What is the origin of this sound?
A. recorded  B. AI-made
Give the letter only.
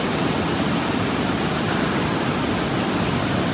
A